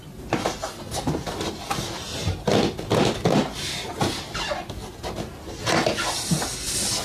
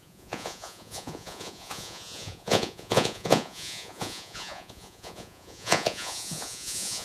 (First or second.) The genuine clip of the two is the first